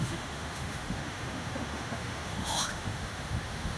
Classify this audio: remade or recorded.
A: remade